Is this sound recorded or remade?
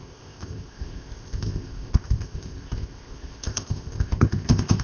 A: remade